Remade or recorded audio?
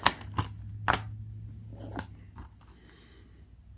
recorded